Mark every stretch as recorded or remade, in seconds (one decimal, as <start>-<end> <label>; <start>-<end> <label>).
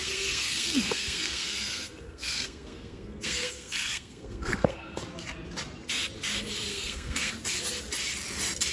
0.0-5.0 remade; 5.0-6.7 recorded; 6.7-7.3 remade; 7.3-8.7 recorded